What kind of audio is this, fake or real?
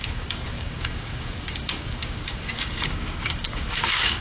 fake